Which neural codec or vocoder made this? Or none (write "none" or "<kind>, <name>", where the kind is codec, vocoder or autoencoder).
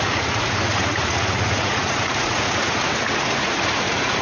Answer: vocoder, Vocos